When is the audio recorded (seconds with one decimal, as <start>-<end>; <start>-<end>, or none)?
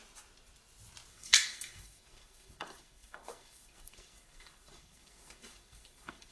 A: 0.0-1.1